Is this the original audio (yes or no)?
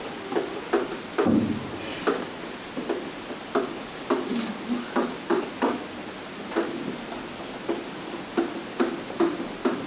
yes